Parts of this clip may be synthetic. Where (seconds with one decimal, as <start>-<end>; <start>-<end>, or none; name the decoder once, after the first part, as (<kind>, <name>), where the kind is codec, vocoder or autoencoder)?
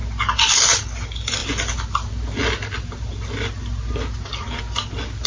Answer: none